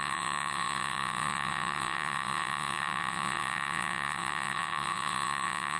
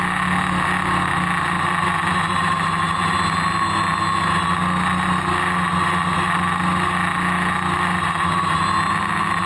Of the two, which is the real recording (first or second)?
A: second